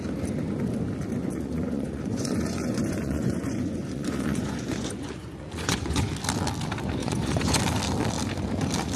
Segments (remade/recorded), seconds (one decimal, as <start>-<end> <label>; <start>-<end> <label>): 0.0-1.2 recorded; 1.2-6.1 remade; 6.1-7.0 recorded; 7.0-7.6 remade; 7.6-9.0 recorded